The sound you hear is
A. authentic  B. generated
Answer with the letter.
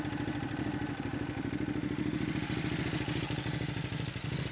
A